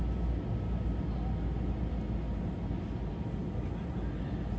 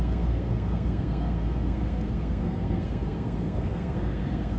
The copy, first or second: second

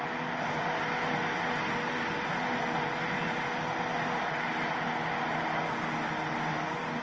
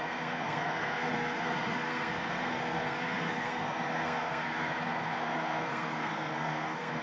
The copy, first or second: second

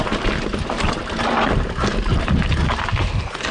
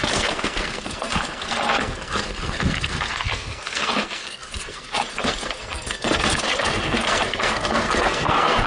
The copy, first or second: second